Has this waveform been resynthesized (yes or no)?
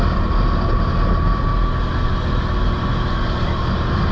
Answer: no